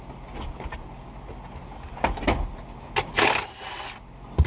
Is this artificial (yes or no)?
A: no